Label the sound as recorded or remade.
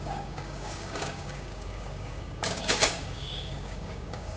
remade